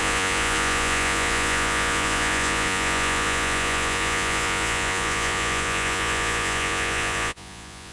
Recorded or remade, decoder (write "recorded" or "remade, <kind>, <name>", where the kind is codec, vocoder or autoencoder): remade, vocoder, Vocos